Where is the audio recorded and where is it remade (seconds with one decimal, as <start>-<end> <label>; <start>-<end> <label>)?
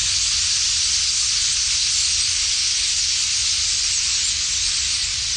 0.0-5.4 recorded